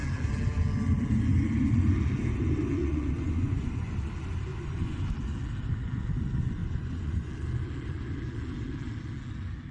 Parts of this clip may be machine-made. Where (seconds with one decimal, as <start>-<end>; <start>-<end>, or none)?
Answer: 2.8-4.0; 4.5-5.1; 6.6-7.3